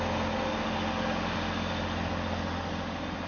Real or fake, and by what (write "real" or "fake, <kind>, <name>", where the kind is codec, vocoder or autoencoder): real